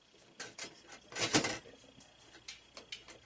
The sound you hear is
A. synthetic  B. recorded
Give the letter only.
B